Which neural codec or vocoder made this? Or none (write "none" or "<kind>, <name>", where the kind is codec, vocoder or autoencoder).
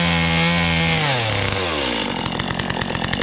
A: none